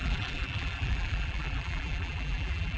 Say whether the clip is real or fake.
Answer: fake